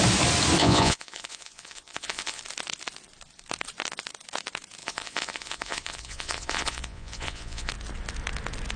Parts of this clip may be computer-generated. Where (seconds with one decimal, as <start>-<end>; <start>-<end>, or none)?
0.6-2.4; 4.8-7.7